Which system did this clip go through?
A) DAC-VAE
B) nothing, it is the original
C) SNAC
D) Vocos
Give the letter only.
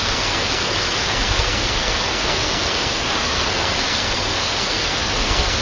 C